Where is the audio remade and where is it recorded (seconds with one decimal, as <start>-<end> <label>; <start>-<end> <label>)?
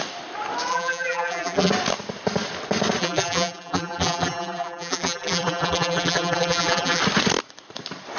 0.0-0.7 recorded; 0.7-1.7 remade; 1.7-3.0 recorded; 3.0-7.0 remade; 7.0-8.2 recorded